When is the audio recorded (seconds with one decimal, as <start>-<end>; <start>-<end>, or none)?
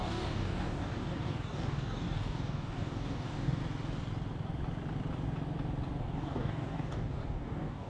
3.6-6.0